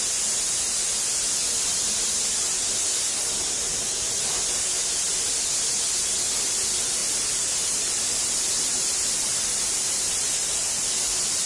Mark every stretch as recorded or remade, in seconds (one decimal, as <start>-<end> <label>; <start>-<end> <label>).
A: 0.0-7.0 recorded; 7.0-11.5 remade